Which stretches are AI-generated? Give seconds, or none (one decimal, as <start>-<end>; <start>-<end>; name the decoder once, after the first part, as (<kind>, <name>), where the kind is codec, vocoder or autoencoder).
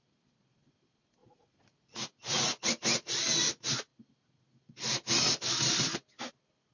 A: 1.2-2.5 (vocoder, Vocos)